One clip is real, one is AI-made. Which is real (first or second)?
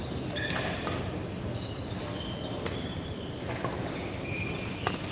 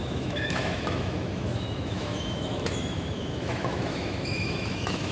first